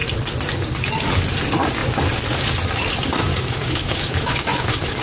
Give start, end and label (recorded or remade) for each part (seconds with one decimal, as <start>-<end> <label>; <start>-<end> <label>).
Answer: 0.0-3.3 recorded; 3.3-5.0 remade